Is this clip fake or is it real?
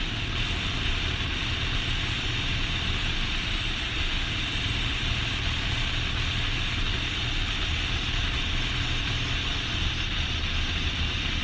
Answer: real